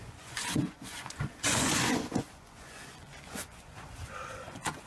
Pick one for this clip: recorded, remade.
remade